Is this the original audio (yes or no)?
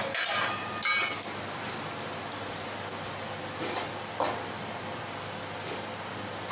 yes